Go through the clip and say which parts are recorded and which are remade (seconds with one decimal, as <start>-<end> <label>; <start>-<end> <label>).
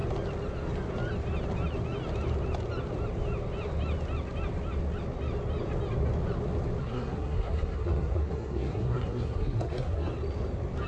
0.0-6.8 recorded; 6.8-10.1 remade; 10.1-10.9 recorded